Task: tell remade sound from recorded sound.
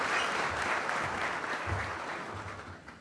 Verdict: recorded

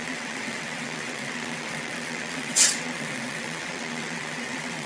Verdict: remade